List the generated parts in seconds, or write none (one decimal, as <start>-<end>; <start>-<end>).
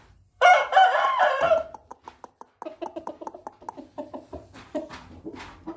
0.0-1.9; 3.0-3.4